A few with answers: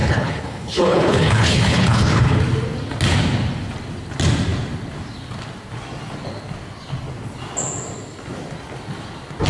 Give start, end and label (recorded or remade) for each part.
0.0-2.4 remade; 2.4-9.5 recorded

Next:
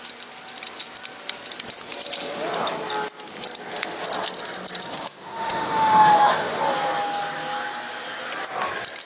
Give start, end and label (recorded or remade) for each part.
0.0-4.9 recorded; 4.9-6.6 remade; 6.6-9.1 recorded